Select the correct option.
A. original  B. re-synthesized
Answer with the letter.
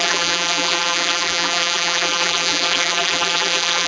B